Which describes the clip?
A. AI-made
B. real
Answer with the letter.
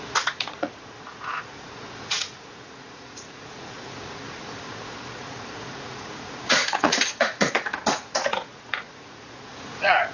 A